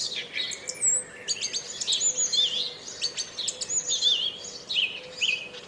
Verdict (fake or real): real